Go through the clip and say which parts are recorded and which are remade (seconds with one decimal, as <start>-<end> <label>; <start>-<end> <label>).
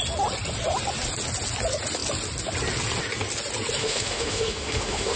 0.0-3.8 recorded; 3.8-5.2 remade